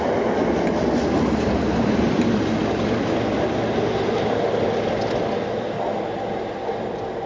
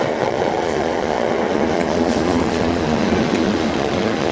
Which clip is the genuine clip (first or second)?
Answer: first